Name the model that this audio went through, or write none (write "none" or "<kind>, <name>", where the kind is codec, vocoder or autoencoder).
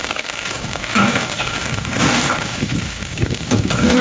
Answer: codec, DAC